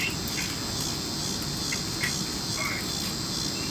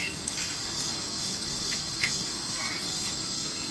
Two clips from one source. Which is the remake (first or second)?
second